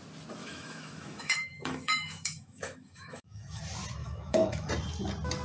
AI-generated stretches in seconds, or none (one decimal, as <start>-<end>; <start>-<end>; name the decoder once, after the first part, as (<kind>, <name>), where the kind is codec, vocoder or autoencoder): 0.4-3.6 (autoencoder, DAC-VAE); 4.0-4.7